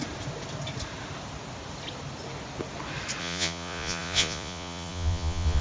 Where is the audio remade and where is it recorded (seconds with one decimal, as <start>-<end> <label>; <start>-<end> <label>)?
0.0-3.2 recorded; 3.2-5.6 remade